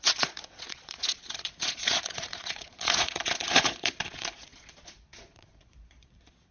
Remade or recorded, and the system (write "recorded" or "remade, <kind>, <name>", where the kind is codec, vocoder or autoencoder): remade, vocoder, Vocos